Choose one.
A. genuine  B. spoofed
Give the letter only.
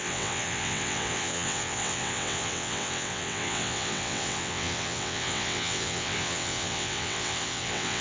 B